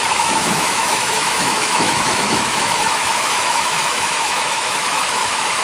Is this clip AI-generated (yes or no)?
yes